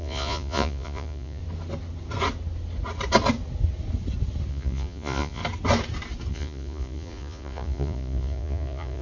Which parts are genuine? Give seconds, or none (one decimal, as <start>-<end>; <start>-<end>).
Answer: 1.4-4.5; 5.4-6.3